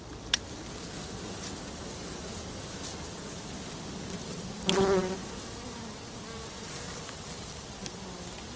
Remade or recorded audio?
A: recorded